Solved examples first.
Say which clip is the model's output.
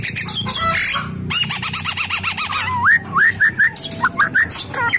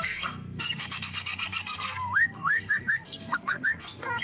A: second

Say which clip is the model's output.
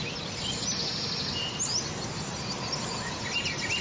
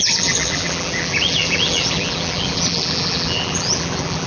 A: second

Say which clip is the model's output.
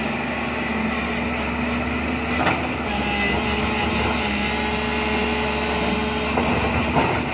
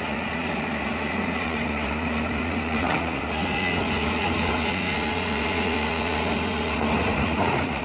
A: second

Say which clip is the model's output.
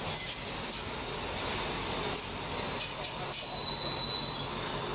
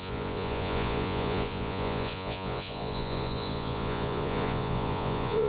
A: second